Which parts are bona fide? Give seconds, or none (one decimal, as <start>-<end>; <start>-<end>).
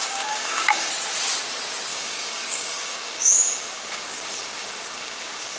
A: 0.9-1.9